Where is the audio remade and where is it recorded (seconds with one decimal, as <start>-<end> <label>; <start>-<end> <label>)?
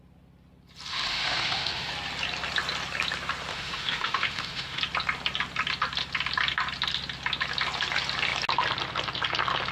0.0-0.9 recorded; 0.9-1.9 remade; 1.9-3.5 recorded; 3.5-4.8 remade; 4.8-9.7 recorded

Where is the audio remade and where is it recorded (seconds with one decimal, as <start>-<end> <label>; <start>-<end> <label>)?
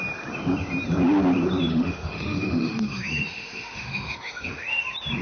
0.0-1.7 recorded; 1.7-4.8 remade; 4.8-5.2 recorded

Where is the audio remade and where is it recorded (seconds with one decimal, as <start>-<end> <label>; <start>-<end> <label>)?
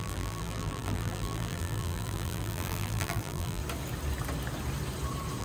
0.0-3.6 remade; 3.6-5.4 recorded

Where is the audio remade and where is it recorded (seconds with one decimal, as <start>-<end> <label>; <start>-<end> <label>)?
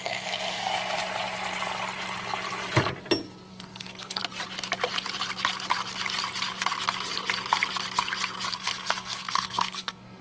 0.0-0.7 remade; 0.7-3.5 recorded; 3.5-4.2 remade; 4.2-8.5 recorded; 8.5-10.2 remade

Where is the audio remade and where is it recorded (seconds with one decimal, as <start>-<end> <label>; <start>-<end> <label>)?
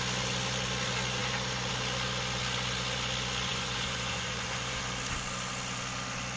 0.0-3.5 recorded; 3.5-4.8 remade; 4.8-6.4 recorded